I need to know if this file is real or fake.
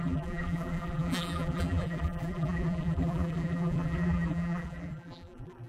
fake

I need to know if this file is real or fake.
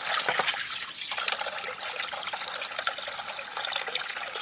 real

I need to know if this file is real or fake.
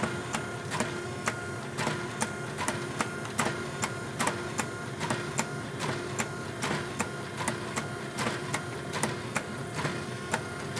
real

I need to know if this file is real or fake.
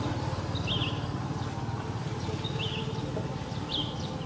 real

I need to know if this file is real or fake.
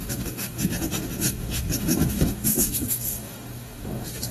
fake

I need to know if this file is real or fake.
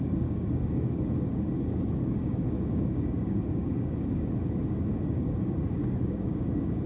fake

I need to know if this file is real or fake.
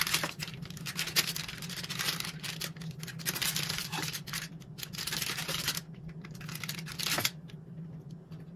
real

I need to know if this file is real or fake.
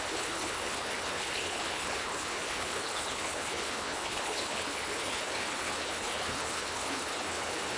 fake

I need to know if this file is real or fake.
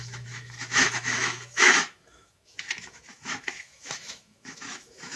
fake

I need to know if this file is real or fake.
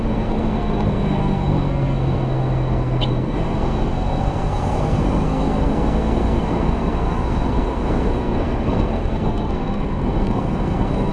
fake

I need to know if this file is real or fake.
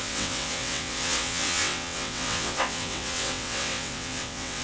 fake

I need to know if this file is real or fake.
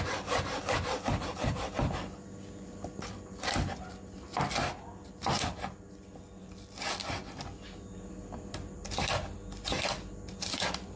real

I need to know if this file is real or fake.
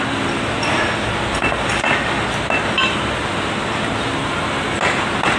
real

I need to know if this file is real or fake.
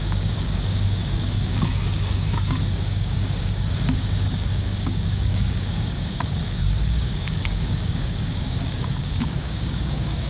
fake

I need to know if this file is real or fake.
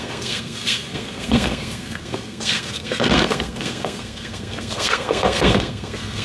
fake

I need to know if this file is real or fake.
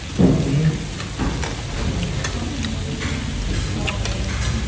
real